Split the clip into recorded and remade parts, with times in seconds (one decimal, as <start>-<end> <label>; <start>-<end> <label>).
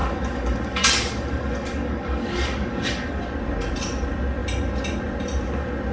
0.0-3.2 remade; 3.2-5.9 recorded